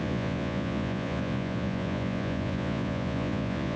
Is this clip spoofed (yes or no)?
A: yes